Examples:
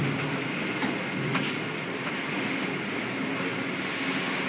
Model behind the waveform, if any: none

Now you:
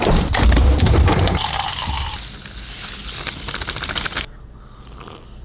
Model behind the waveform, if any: vocoder, BigVGAN v2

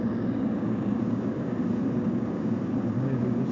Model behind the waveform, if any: codec, DAC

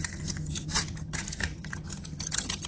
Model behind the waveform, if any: vocoder, HiFi-GAN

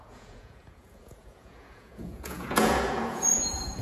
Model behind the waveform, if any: vocoder, Vocos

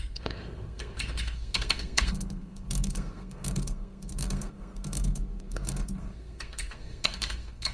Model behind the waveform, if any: codec, SNAC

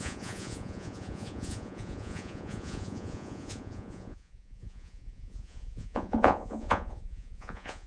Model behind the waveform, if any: vocoder, Vocos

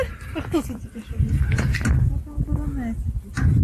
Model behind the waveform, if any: none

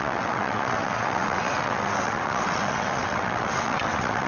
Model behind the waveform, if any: vocoder, WaveNeXt